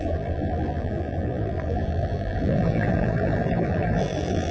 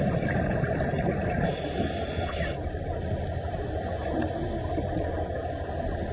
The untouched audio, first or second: second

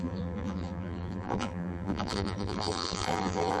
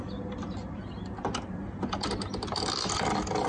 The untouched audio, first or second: second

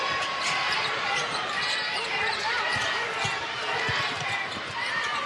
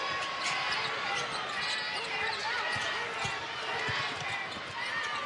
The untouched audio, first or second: second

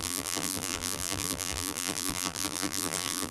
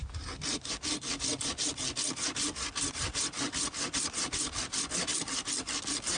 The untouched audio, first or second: second